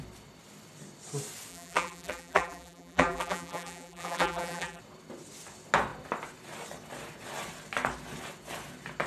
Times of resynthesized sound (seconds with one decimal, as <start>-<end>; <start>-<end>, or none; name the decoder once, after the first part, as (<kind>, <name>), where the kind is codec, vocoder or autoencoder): 1.5-4.8 (vocoder, BigVGAN v2)